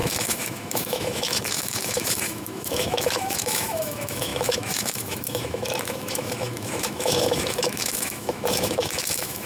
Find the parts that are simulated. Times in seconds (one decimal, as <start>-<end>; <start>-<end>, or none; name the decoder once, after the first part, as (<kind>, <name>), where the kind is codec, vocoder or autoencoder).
0.0-9.5 (autoencoder, DAC-VAE)